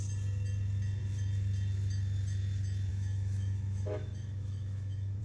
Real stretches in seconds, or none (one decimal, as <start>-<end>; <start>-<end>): 0.0-2.9